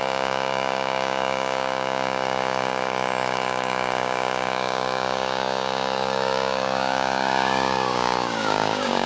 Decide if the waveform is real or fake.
fake